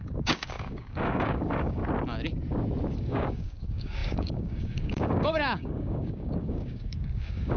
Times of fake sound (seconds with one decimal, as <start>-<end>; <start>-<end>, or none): 0.0-1.8; 3.0-7.6